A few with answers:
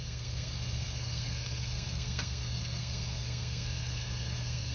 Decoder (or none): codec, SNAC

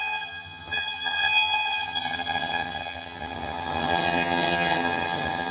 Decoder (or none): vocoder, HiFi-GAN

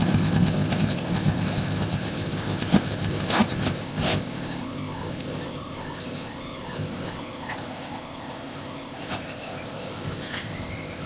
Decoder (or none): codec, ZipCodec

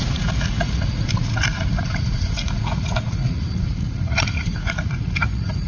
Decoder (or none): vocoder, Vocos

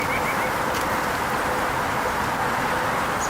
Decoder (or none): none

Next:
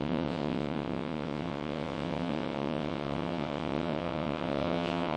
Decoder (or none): vocoder, WaveNeXt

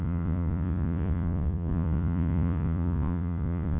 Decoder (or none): vocoder, Vocos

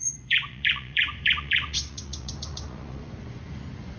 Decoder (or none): vocoder, Vocos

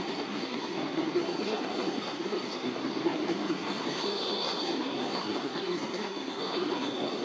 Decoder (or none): codec, SNAC